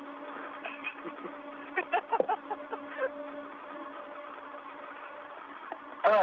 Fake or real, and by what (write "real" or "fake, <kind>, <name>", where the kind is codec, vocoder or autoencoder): real